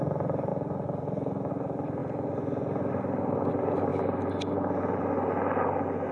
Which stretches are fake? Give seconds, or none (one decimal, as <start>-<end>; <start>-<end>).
none